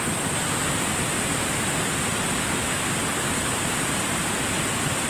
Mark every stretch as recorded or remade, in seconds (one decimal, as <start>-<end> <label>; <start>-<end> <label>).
0.0-5.1 recorded